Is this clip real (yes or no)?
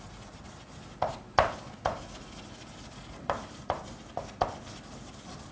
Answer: yes